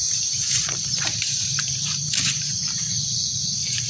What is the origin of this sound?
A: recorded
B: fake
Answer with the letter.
B